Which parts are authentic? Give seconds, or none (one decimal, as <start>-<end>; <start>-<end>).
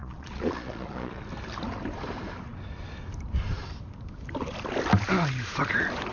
1.2-6.1